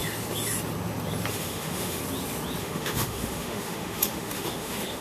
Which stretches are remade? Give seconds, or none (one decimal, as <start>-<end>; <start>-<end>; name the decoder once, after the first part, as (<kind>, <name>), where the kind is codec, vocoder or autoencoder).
1.3-2.0 (autoencoder, DAC-VAE); 2.6-5.0